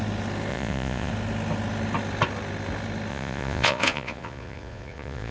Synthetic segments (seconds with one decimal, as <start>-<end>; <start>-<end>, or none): 0.5-1.1; 3.1-5.3